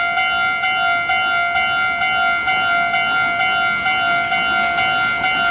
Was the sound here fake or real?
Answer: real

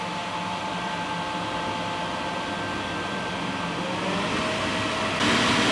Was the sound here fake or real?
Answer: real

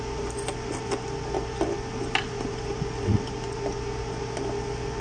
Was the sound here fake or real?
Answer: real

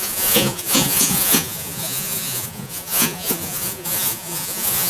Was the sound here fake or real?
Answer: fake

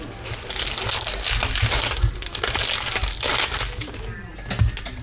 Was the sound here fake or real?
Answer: real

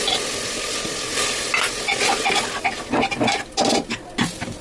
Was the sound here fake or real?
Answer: real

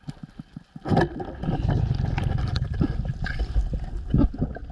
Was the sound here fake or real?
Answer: real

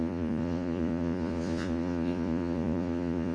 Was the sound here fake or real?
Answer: fake